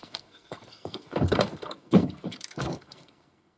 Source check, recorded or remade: remade